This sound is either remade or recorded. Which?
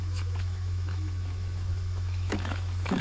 remade